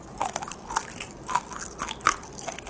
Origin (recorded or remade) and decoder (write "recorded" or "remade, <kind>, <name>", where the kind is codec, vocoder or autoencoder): recorded